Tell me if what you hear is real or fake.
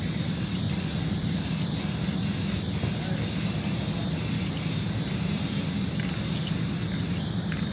real